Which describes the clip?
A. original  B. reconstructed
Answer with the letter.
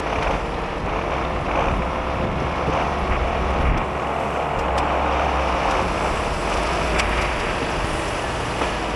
A